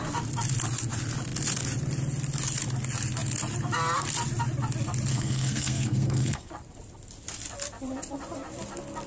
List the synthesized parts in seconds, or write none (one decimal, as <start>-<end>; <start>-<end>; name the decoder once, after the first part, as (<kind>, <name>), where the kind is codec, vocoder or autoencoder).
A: 5.1-6.5 (codec, SNAC)